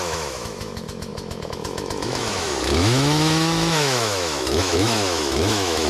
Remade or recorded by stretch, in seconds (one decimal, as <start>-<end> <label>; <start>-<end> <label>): 0.0-5.9 remade